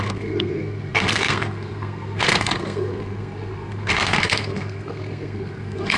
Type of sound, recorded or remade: remade